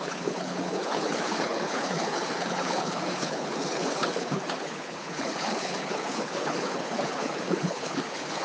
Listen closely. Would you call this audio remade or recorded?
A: remade